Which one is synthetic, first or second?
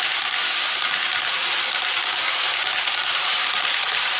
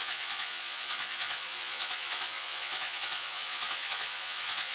second